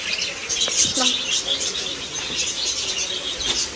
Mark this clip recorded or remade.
recorded